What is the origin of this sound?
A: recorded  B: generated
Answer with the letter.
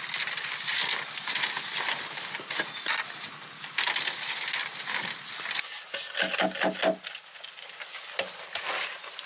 A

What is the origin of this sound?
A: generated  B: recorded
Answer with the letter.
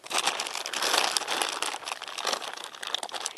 B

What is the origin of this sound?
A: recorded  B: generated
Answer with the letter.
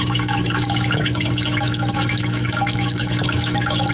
B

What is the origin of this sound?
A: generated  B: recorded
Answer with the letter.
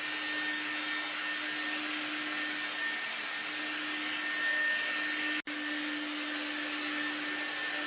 B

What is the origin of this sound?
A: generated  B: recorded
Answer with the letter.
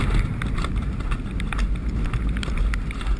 B